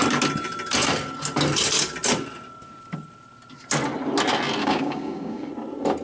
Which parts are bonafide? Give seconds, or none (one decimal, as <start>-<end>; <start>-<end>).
0.0-4.6; 5.5-6.0